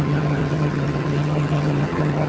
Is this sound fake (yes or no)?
yes